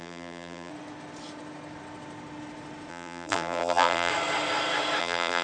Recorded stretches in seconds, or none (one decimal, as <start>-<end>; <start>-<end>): 0.7-2.9; 4.1-5.0